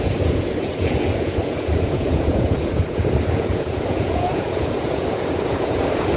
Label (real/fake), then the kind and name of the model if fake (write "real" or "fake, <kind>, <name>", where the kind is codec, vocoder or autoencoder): fake, vocoder, Vocos